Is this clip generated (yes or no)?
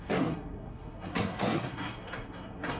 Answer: yes